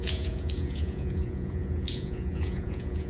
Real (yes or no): no